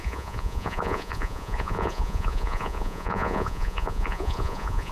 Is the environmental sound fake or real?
fake